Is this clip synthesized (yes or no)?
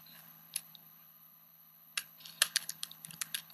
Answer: yes